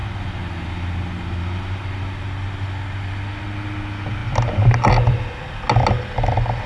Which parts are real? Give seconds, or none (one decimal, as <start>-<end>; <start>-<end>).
0.0-6.7